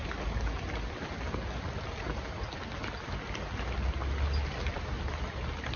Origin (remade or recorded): recorded